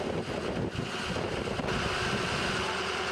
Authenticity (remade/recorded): recorded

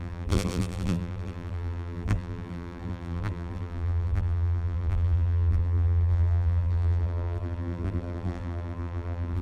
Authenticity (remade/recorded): remade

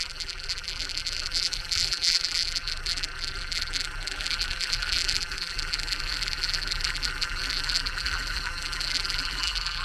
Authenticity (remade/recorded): remade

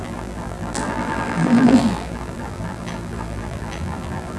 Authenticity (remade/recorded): remade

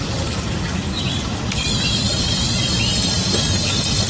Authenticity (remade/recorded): remade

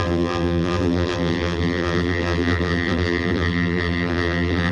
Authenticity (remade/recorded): remade